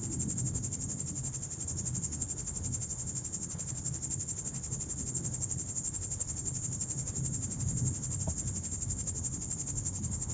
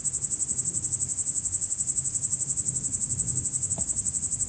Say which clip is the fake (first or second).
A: first